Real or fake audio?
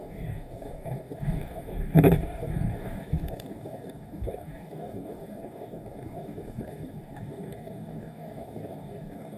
fake